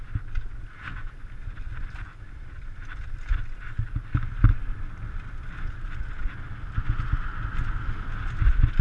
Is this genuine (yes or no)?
yes